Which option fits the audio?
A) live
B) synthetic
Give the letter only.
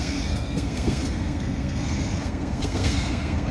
B